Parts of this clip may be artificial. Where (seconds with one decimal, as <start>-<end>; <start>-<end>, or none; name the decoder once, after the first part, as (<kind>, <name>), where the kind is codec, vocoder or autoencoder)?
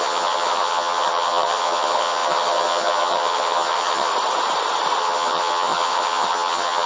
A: 0.0-4.1 (vocoder, HiFi-GAN); 5.0-6.9